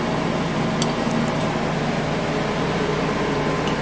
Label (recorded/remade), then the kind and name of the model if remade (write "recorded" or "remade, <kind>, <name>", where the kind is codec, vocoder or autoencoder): recorded